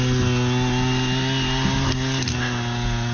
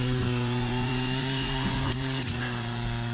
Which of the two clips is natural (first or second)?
first